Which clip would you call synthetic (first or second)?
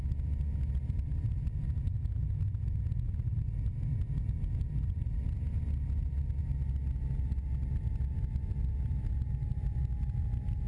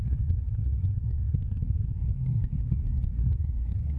second